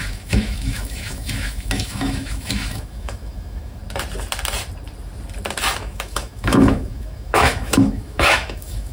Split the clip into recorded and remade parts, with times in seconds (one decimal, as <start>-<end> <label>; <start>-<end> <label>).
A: 0.0-3.8 remade; 3.8-5.8 recorded; 5.8-8.9 remade